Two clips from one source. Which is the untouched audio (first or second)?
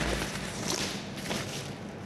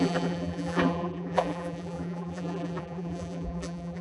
first